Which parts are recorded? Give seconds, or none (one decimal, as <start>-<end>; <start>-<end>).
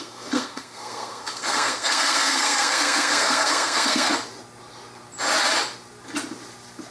4.1-6.9